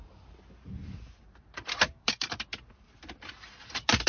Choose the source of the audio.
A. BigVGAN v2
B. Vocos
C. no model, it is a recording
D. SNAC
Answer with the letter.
A